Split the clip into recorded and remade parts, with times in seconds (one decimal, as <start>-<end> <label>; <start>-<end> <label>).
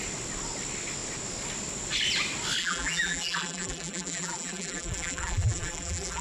0.0-2.6 recorded; 2.6-6.2 remade